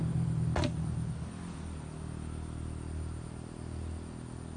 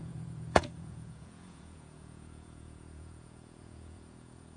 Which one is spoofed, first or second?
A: second